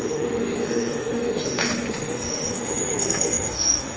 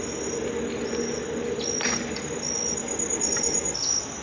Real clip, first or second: second